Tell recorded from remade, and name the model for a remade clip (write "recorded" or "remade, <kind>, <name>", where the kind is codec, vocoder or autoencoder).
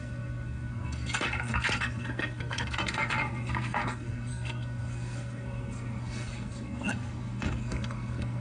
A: remade, codec, SNAC